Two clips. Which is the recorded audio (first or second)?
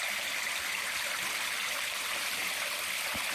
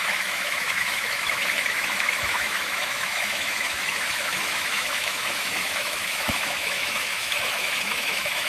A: first